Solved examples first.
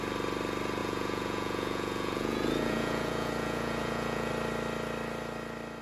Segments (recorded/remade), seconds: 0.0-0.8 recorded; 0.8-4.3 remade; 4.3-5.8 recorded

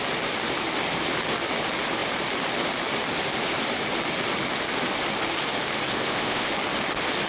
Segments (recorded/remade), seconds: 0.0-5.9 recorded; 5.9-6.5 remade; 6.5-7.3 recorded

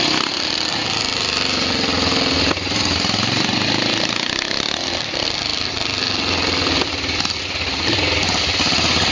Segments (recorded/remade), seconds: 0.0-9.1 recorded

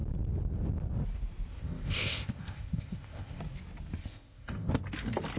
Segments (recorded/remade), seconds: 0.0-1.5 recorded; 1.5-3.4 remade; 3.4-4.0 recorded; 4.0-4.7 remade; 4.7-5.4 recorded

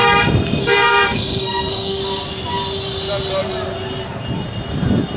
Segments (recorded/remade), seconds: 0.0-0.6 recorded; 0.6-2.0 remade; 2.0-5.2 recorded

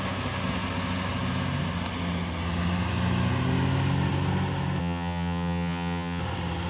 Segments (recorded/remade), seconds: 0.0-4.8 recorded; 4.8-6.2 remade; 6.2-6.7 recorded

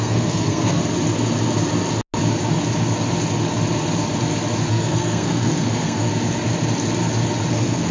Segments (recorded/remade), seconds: 0.0-0.8 remade; 0.8-4.7 recorded; 4.7-6.1 remade; 6.1-7.5 recorded; 7.5-7.9 remade